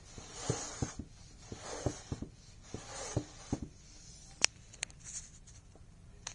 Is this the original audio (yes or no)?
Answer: no